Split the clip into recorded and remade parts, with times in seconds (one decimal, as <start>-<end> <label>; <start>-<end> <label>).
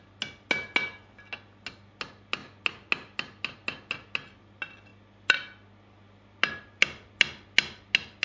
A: 0.0-8.2 recorded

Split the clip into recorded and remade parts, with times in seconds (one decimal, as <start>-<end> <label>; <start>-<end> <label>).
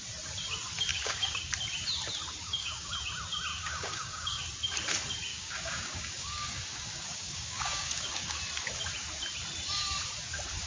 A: 0.0-0.9 recorded; 0.9-1.5 remade; 1.5-2.4 recorded; 2.4-3.0 remade; 3.0-3.5 recorded; 3.5-4.4 remade; 4.4-5.3 recorded; 5.3-8.4 remade; 8.4-10.7 recorded